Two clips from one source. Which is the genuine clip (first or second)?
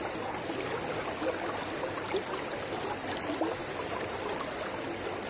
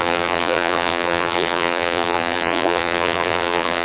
first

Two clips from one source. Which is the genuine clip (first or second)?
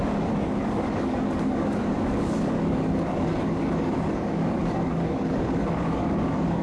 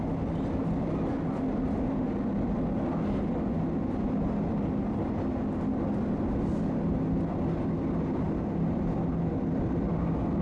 second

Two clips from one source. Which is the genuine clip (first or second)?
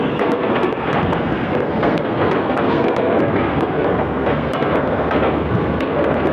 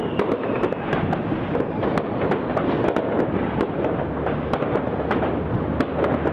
second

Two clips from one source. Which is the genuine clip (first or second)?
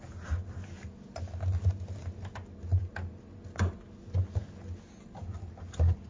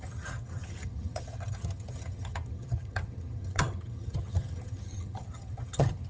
first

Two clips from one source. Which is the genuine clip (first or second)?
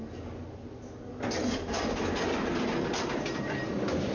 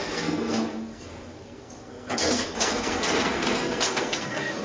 first